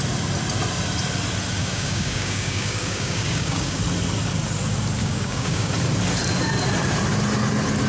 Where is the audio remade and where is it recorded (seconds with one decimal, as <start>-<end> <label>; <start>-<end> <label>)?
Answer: 0.0-1.6 recorded; 1.6-3.8 remade; 3.8-5.0 recorded; 5.0-5.7 remade; 5.7-7.9 recorded